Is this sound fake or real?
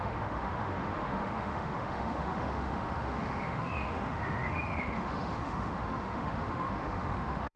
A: fake